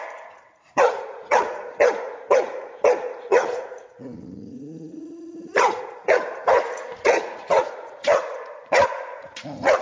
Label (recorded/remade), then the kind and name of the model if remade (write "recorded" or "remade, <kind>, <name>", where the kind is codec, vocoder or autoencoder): remade, vocoder, Vocos